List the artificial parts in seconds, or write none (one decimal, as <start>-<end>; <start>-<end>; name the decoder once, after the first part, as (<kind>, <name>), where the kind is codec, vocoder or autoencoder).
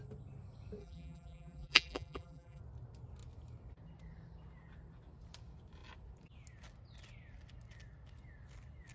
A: 0.8-2.6 (vocoder, BigVGAN v2)